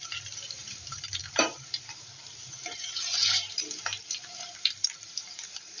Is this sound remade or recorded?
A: remade